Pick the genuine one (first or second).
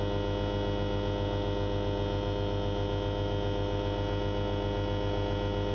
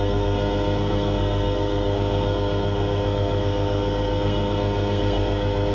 first